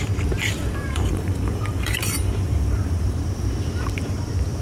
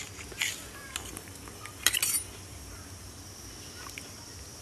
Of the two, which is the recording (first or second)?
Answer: second